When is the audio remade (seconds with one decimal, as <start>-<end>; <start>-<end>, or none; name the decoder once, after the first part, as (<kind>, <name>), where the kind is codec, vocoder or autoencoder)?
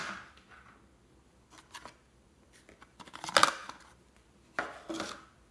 2.1-5.5 (vocoder, BigVGAN v2)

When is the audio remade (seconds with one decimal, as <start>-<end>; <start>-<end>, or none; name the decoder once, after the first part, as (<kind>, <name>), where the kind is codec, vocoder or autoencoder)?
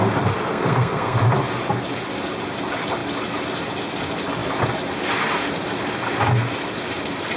0.5-1.2 (codec, SNAC)